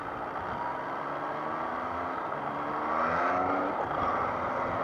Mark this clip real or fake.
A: real